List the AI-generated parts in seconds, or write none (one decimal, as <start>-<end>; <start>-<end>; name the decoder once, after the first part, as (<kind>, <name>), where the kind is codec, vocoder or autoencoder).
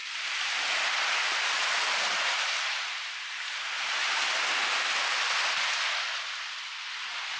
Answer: none